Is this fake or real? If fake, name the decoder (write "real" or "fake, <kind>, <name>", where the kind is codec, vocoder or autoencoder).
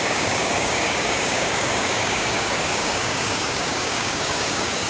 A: fake, codec, DAC